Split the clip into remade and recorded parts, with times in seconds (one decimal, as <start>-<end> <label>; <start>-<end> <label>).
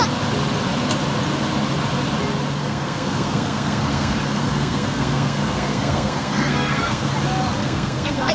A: 0.0-2.6 recorded; 2.6-7.1 remade; 7.1-7.6 recorded; 7.6-8.3 remade